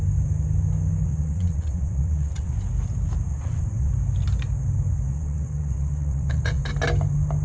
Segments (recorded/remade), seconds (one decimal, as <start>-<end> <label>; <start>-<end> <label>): 0.0-1.1 recorded; 1.1-2.5 remade; 2.5-3.3 recorded; 3.3-3.9 remade; 3.9-5.1 recorded; 5.1-6.6 remade; 6.6-7.4 recorded